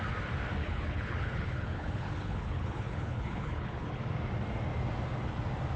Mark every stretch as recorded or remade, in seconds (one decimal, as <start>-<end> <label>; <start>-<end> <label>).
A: 0.0-0.6 recorded; 0.6-4.0 remade; 4.0-5.8 recorded